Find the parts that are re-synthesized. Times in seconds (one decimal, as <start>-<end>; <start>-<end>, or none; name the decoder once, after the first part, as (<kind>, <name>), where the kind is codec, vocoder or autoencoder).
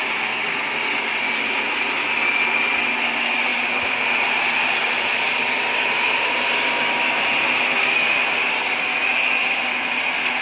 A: 3.5-5.6 (vocoder, BigVGAN v2)